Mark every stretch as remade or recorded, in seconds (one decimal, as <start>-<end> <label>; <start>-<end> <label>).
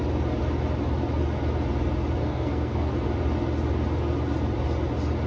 0.0-2.2 recorded; 2.2-2.9 remade; 2.9-5.3 recorded